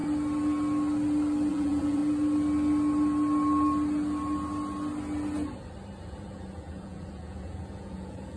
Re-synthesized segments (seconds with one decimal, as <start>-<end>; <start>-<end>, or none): 1.5-2.0; 6.0-8.4